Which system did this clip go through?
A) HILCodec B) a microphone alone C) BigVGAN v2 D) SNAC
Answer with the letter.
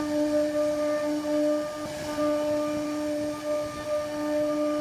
B